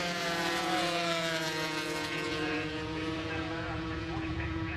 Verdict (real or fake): fake